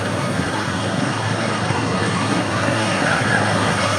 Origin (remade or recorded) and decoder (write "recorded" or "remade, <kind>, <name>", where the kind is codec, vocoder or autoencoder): remade, codec, SNAC